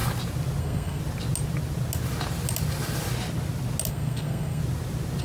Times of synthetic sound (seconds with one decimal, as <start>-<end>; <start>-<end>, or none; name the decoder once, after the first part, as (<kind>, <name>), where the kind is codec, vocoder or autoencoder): 0.6-1.0 (codec, SNAC); 3.9-4.6